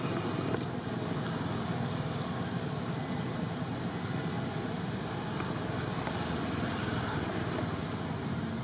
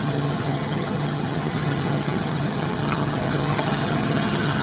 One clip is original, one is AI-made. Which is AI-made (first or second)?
second